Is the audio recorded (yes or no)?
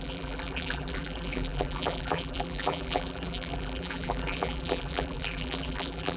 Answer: no